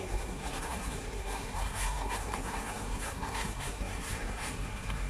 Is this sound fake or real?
fake